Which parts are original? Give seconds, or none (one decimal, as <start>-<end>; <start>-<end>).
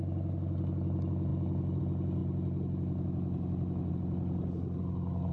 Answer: 0.0-5.3